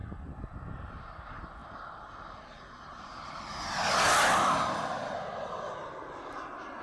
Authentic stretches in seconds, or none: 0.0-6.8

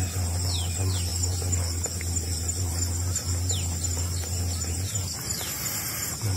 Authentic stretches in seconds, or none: 0.0-6.4

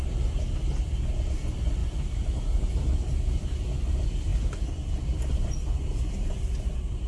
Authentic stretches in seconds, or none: 0.0-7.1

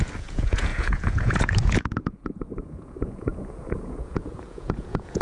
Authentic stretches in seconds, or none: none

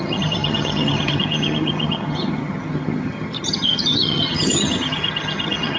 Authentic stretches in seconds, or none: none